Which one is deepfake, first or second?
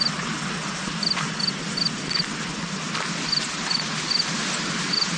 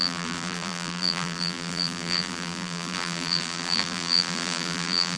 second